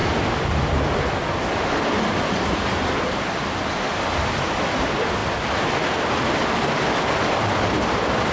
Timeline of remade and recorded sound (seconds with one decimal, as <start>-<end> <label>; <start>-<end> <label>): 0.0-0.7 recorded; 0.7-1.2 remade; 1.2-3.9 recorded; 3.9-8.3 remade